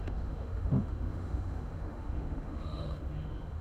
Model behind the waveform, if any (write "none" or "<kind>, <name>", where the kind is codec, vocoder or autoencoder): autoencoder, DAC-VAE